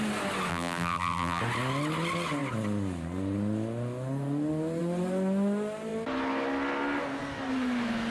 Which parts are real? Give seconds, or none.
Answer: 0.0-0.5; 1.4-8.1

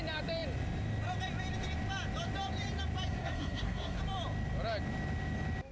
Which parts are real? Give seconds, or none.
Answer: 0.0-3.1; 4.0-5.7

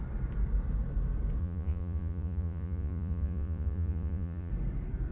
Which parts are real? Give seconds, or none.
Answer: 0.0-1.4; 4.5-5.1